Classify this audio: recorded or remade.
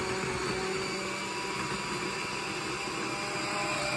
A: recorded